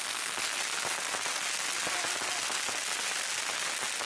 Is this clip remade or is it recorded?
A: recorded